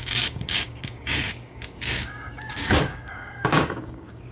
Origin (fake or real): fake